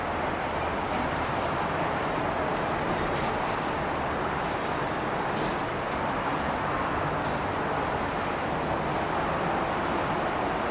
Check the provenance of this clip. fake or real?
fake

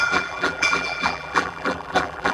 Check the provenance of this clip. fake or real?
fake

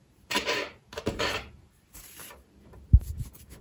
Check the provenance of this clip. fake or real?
fake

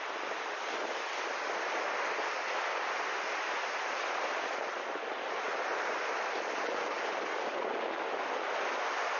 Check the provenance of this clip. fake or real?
real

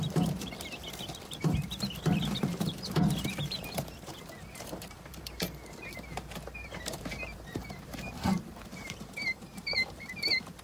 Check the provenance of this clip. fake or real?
fake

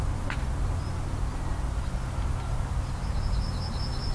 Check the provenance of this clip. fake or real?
real